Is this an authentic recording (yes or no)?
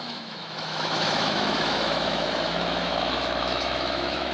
no